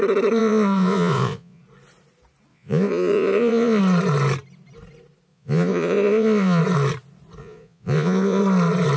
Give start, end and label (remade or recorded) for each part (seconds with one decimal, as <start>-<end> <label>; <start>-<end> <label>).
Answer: 0.0-0.4 recorded; 0.4-1.6 remade; 1.6-2.5 recorded; 2.5-3.8 remade; 3.8-5.3 recorded; 5.3-6.6 remade; 6.6-7.4 recorded; 7.4-8.4 remade; 8.4-9.0 recorded